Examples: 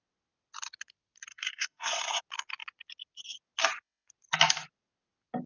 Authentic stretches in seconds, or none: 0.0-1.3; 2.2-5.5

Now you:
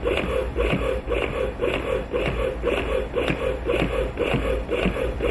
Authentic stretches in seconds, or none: 0.0-5.3

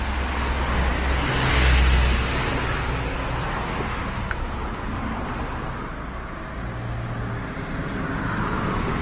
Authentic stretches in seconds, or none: 0.0-9.0

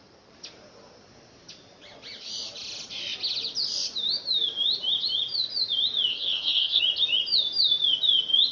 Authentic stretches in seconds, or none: 0.0-6.1; 6.8-8.5

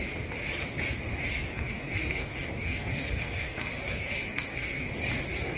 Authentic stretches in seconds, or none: 0.0-1.5; 4.9-5.6

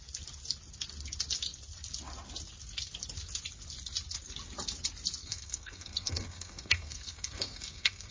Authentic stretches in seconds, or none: 0.0-5.2

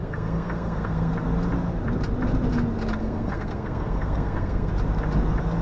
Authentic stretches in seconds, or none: 1.1-3.0; 4.7-5.6